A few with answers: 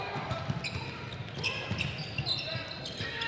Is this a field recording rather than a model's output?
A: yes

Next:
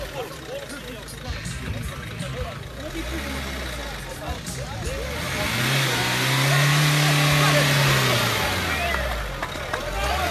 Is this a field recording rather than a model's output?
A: yes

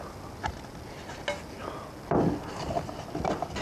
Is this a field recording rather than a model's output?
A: yes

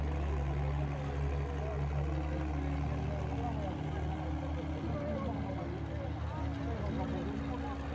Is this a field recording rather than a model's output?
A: yes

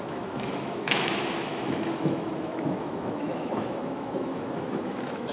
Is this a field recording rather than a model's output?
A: no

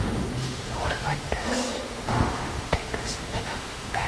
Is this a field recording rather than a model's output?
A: no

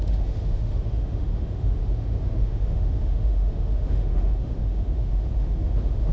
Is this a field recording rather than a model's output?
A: no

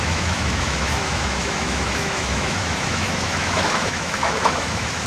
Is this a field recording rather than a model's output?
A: no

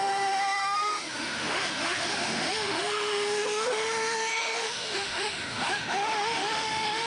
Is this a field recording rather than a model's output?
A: no